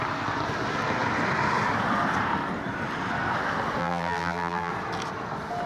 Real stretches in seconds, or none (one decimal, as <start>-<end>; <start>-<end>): 0.0-3.8; 4.7-5.7